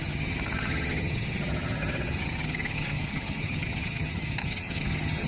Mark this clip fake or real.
fake